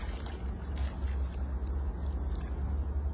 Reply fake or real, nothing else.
real